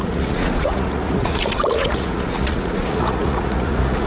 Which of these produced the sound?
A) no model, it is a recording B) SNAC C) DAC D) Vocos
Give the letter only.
D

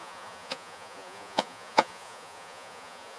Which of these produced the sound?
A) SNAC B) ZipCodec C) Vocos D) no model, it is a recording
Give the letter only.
C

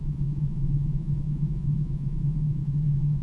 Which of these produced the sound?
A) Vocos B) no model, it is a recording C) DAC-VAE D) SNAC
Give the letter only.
A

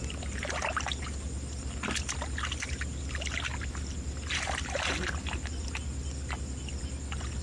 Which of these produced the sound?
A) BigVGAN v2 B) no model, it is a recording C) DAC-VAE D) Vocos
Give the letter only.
B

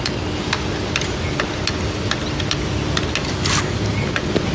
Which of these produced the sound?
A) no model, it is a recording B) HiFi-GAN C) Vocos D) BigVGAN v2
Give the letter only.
A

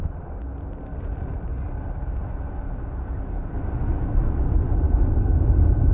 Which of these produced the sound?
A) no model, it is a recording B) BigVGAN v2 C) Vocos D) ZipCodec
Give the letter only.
A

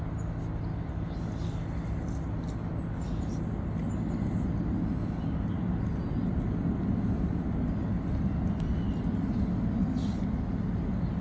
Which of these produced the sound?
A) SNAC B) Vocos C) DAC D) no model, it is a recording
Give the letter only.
D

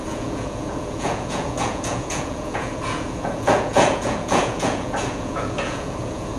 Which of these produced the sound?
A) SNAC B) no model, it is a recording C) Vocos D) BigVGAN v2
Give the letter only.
C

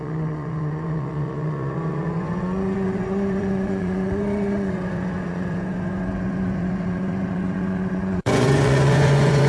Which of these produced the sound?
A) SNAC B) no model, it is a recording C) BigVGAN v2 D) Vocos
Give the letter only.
D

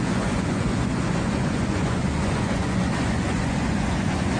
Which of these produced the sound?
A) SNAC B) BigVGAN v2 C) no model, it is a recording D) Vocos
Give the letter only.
D